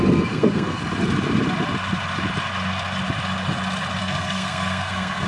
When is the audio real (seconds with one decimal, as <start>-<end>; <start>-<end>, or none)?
0.8-4.0